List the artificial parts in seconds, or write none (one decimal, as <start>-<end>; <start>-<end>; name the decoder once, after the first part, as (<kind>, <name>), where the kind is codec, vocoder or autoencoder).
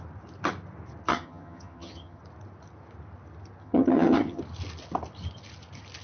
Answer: 1.1-2.2 (vocoder, HiFi-GAN); 3.6-4.4